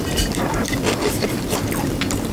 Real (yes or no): yes